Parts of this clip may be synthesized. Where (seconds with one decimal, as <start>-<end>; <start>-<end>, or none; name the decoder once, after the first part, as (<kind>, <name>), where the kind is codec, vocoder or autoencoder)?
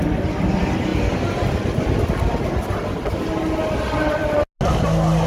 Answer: none